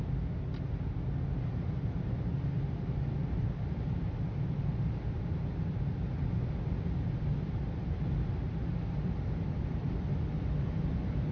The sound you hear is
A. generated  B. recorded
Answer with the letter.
B